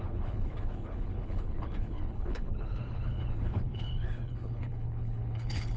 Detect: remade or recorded remade